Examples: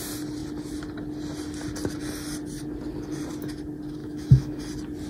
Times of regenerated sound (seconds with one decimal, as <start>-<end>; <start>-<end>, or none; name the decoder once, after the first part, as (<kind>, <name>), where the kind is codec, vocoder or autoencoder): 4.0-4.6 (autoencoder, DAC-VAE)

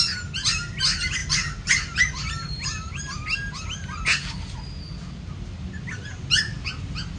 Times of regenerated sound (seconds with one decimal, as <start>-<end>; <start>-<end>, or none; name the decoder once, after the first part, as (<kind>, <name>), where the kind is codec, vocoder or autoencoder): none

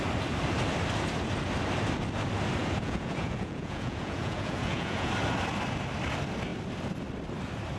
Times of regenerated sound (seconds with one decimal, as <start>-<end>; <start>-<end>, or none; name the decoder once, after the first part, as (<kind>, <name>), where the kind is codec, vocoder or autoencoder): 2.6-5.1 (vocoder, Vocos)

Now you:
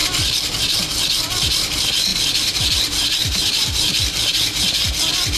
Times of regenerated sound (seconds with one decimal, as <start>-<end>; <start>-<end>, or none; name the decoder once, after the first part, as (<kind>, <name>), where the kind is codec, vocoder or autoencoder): 2.1-2.6 (vocoder, BigVGAN v2); 3.2-4.9

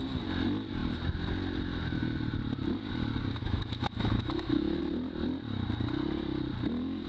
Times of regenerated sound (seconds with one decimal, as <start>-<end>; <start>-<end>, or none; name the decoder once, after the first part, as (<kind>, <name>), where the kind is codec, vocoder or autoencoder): 3.4-4.8 (autoencoder, DAC-VAE)

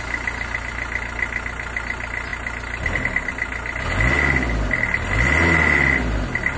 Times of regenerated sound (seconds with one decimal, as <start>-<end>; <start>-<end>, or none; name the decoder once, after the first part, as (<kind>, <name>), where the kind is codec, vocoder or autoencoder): none

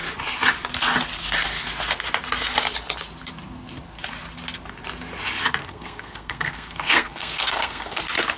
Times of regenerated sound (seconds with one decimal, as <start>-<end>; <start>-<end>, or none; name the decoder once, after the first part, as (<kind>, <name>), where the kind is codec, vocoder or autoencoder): 5.6-8.0 (codec, SNAC)

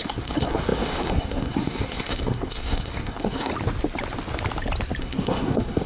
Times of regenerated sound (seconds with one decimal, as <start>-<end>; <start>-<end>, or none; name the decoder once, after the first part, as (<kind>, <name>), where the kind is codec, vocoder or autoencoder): 0.0-3.5 (codec, SNAC); 5.0-5.9